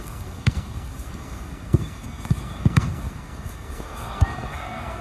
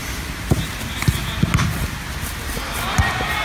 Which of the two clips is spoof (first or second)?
first